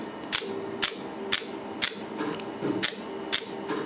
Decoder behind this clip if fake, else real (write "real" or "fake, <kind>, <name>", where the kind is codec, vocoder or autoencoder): real